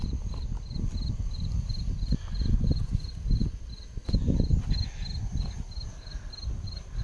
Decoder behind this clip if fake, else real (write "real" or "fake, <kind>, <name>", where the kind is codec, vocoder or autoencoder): real